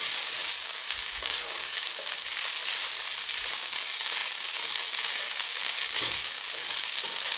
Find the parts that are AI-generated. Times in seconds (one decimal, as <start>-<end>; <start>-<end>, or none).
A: 0.0-2.6; 3.5-7.4